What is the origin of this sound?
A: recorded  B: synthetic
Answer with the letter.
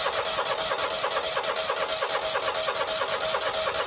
A